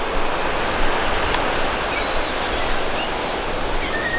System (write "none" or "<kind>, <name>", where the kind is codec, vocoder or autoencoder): none